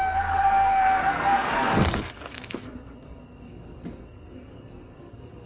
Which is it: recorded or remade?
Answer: remade